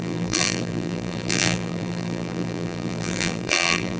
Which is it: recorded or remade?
remade